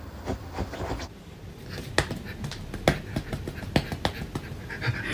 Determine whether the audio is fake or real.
real